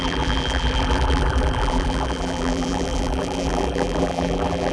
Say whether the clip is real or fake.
fake